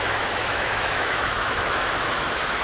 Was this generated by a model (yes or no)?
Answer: yes